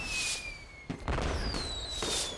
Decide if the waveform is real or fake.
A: real